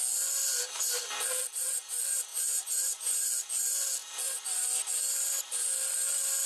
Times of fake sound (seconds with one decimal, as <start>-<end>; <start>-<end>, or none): 2.3-3.3